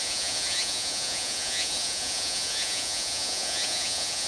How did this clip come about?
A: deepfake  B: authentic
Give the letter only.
A